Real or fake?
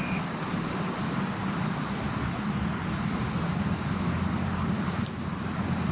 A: real